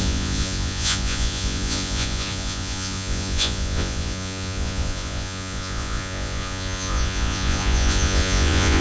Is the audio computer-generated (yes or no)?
yes